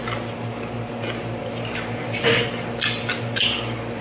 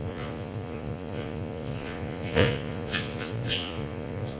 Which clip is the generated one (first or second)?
second